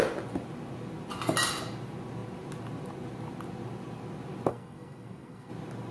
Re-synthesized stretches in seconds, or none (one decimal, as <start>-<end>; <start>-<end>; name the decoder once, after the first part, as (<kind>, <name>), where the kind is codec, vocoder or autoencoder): 4.5-5.5 (codec, SNAC)